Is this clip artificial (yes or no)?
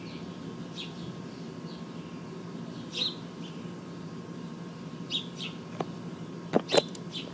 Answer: no